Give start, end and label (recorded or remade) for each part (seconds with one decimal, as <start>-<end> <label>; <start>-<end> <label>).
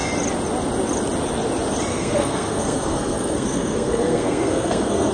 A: 0.0-1.9 recorded; 1.9-5.1 remade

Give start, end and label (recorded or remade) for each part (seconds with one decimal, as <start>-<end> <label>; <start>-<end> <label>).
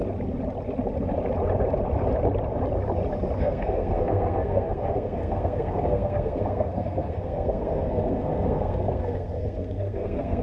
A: 0.0-3.4 recorded; 3.4-10.4 remade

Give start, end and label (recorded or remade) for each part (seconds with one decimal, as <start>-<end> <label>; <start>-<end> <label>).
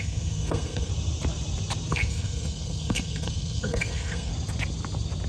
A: 0.0-0.9 remade; 0.9-1.9 recorded; 1.9-4.3 remade; 4.3-5.3 recorded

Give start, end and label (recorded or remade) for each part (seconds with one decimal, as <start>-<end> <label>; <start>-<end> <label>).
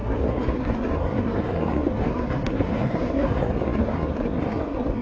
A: 0.0-5.0 remade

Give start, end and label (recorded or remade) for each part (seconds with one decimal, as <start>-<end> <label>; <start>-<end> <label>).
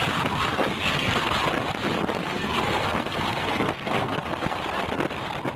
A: 0.0-0.5 recorded; 0.5-1.3 remade; 1.3-2.2 recorded; 2.2-4.6 remade; 4.6-5.6 recorded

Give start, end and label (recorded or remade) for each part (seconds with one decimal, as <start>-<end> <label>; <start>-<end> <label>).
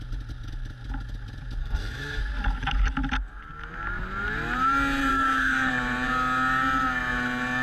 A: 0.0-1.6 recorded; 1.6-2.2 remade; 2.2-5.1 recorded; 5.1-5.7 remade; 5.7-7.6 recorded